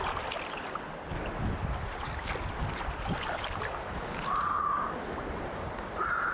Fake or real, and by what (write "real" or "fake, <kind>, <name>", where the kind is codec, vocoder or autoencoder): real